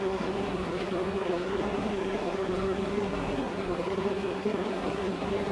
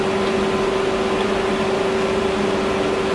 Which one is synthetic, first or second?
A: first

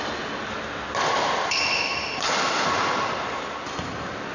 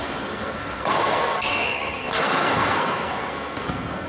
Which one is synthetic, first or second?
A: second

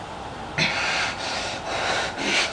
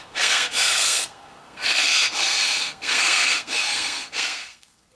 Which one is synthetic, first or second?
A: second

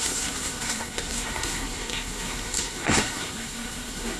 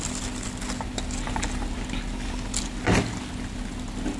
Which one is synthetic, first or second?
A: first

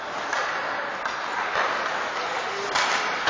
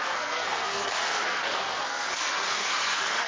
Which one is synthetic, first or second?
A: second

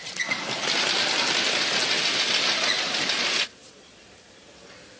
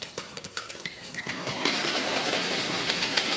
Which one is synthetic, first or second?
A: second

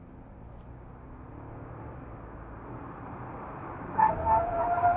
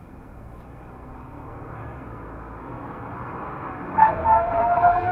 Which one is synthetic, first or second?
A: second